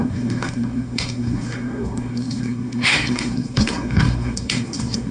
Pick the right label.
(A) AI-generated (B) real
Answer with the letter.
A